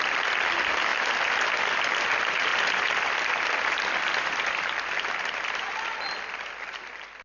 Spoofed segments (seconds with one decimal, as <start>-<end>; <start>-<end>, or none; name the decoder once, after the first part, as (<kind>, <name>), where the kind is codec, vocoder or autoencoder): none